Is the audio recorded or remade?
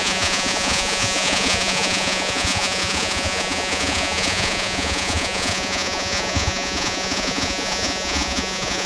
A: remade